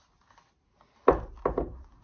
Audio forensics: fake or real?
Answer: real